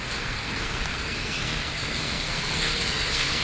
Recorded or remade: remade